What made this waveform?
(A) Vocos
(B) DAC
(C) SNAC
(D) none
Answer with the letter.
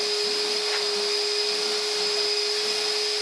D